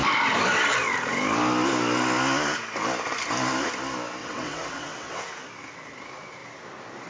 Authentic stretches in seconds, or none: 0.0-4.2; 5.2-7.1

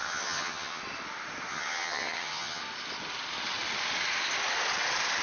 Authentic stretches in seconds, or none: 0.8-1.5; 2.6-5.2

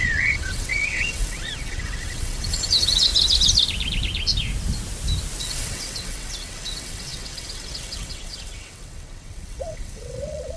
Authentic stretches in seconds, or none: 3.1-5.4

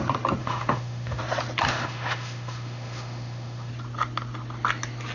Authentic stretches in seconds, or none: 0.0-0.4; 1.2-1.7; 3.7-5.1

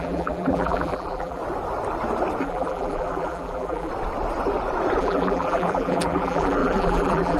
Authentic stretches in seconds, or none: 1.4-2.4; 3.9-5.0

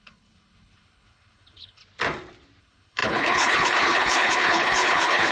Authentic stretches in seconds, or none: 1.8-2.6